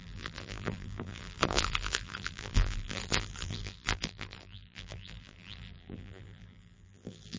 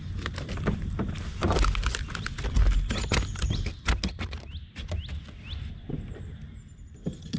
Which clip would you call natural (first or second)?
second